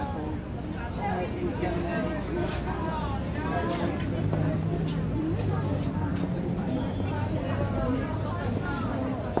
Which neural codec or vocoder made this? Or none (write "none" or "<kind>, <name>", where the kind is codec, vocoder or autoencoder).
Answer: none